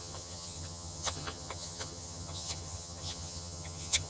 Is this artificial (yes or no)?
yes